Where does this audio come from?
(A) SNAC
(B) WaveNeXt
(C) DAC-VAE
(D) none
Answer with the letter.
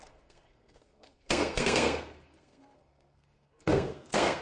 A